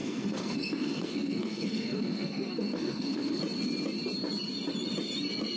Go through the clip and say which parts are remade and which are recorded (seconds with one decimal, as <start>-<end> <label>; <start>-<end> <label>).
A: 0.0-3.4 remade; 3.4-5.6 recorded